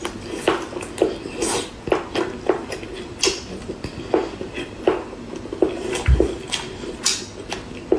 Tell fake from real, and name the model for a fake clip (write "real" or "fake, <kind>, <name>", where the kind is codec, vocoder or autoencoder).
real